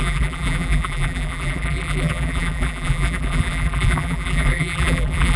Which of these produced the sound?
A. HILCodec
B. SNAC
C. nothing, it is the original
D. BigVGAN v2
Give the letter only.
D